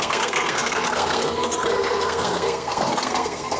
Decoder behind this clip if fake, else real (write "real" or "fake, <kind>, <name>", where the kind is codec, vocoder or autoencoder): fake, codec, SNAC